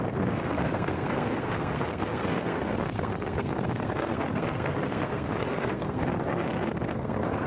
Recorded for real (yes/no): no